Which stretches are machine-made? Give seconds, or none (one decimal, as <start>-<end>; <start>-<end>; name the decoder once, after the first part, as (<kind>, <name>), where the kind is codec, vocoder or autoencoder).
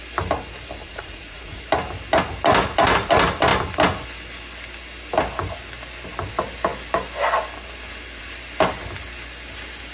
0.8-1.6 (vocoder, Vocos)